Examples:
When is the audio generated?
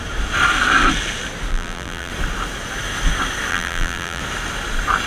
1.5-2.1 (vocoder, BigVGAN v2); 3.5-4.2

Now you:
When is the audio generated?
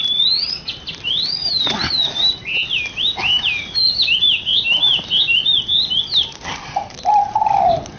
none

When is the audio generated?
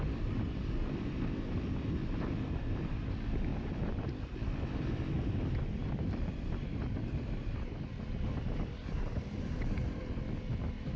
3.5-4.1 (vocoder, BigVGAN v2); 5.8-6.3; 7.0-7.8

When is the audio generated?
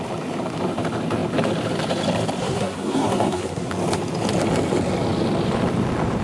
2.4-3.7 (codec, SNAC)